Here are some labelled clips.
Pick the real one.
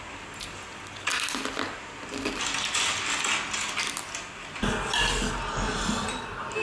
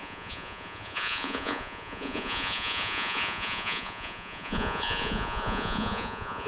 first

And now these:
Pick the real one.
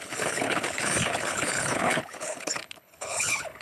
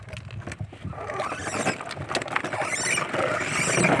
second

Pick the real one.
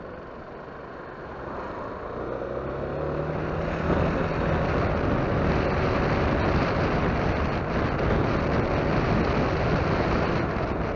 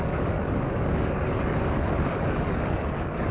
first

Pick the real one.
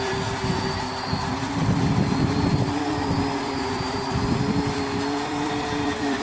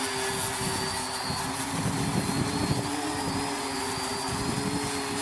second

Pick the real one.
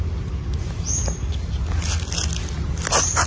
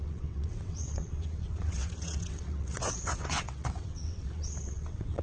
first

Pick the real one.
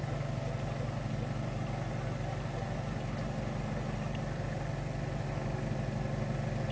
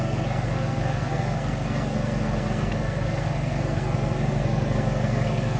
first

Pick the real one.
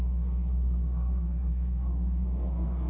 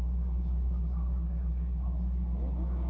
second